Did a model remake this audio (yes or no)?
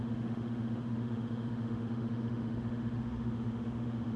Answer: yes